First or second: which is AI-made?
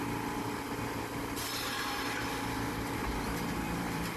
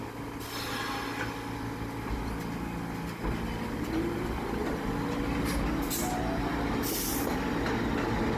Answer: first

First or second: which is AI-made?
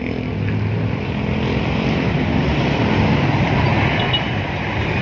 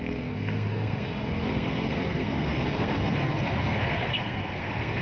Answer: second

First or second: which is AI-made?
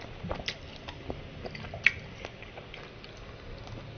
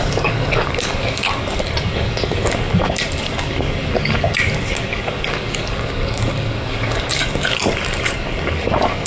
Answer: second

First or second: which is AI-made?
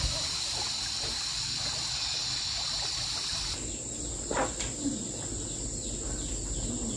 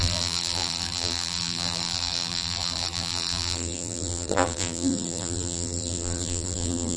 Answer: second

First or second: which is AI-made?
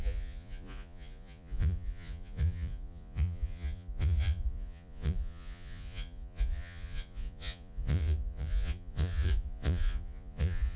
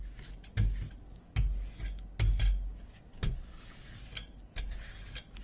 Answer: first